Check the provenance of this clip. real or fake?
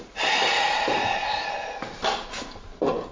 real